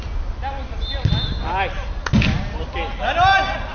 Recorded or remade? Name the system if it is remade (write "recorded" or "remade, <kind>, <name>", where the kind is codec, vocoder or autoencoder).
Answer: recorded